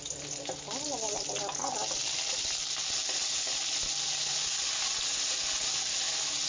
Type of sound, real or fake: real